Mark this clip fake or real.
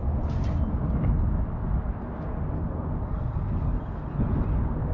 real